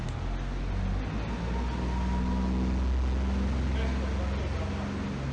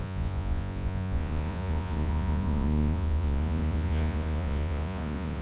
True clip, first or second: first